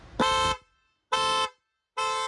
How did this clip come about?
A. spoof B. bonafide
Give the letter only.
B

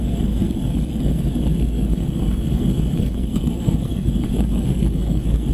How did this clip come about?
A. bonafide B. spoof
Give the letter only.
B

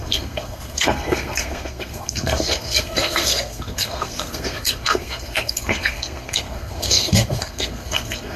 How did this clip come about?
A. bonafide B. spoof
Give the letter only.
B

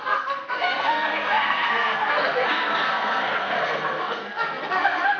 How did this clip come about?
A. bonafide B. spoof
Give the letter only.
B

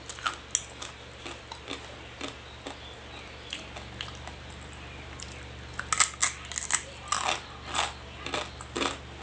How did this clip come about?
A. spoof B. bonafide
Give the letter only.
B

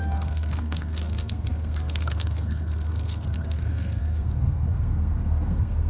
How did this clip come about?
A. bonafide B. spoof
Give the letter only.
B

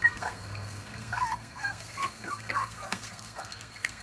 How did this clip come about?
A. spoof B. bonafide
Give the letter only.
A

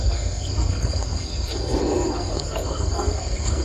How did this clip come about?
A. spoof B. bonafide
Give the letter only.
A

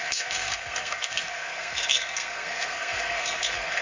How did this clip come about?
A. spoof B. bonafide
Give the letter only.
A